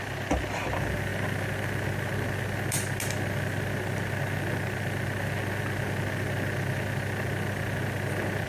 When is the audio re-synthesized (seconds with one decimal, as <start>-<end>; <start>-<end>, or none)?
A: none